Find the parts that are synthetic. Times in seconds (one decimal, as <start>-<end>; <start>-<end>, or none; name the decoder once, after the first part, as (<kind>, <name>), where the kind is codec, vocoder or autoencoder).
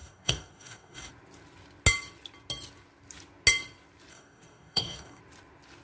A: 0.0-1.1 (codec, DAC); 4.1-5.2